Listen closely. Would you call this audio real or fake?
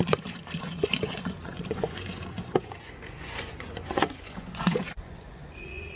fake